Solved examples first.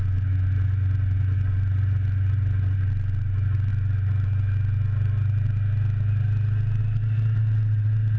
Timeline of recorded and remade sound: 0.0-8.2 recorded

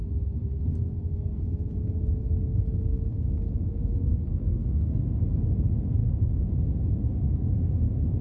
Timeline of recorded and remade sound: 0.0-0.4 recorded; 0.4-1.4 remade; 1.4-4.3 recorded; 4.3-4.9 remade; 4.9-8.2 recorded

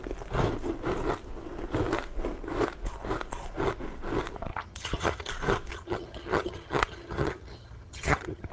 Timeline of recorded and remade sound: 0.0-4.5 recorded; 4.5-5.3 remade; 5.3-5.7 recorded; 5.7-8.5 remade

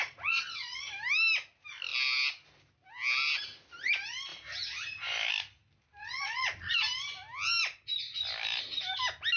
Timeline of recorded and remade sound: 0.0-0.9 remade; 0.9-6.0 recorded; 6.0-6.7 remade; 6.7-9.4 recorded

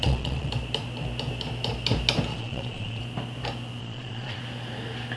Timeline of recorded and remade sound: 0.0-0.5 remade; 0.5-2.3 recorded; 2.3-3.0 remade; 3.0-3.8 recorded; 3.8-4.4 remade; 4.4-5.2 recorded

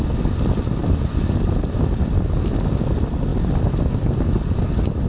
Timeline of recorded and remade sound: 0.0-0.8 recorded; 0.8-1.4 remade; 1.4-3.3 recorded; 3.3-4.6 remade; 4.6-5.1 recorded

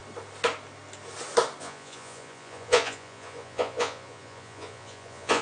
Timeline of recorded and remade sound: 0.0-1.6 recorded; 1.6-5.4 remade

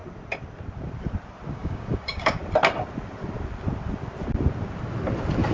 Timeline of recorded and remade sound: 0.0-1.5 recorded; 1.5-2.4 remade; 2.4-5.5 recorded